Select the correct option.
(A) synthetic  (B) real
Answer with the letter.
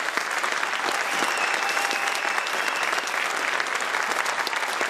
B